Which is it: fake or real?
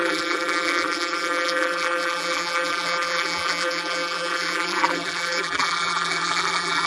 fake